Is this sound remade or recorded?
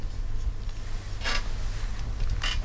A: recorded